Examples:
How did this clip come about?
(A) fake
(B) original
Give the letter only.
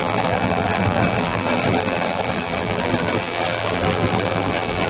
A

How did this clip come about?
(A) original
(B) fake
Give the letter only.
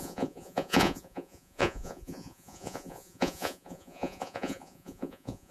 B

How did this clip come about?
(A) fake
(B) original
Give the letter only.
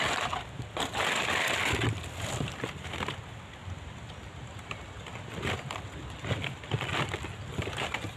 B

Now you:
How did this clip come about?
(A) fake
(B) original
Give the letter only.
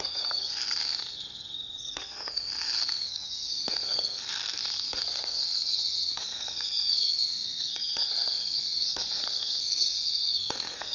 A